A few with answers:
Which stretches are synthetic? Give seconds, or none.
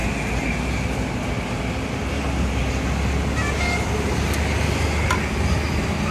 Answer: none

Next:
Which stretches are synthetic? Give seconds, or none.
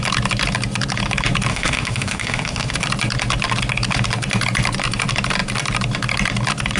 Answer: 1.5-2.7 (autoencoder, DAC-VAE)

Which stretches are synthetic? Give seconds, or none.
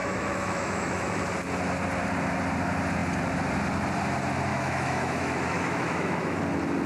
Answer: 0.0-1.2 (autoencoder, DAC-VAE); 4.5-6.4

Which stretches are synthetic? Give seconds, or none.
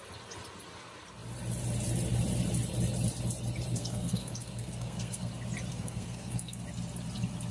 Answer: 3.7-5.3 (codec, SNAC); 5.7-6.6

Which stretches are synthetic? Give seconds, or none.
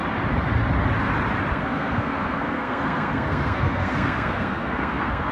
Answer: 1.5-5.3 (codec, SNAC)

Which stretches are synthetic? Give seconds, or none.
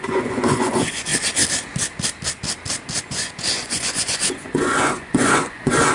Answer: 0.0-1.1 (vocoder, Vocos); 3.0-5.9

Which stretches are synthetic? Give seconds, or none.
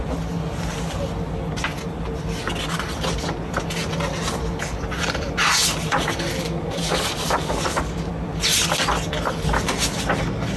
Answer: 6.3-8.1 (codec, DAC)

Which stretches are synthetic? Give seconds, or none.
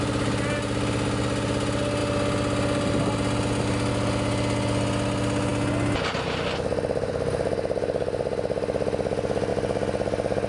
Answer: none